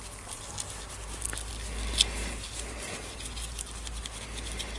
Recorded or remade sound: recorded